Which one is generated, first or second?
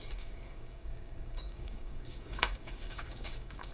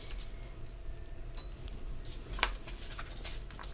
first